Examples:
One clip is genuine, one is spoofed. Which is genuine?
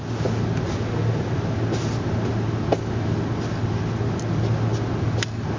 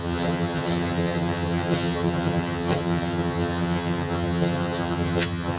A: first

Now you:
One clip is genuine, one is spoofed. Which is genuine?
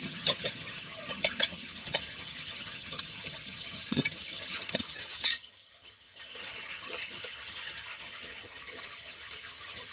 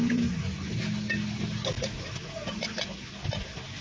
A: second